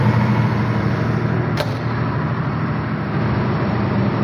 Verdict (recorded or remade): remade